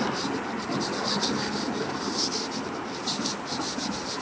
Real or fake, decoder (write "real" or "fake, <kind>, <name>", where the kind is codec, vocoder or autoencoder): real